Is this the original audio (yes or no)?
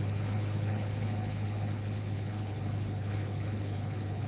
no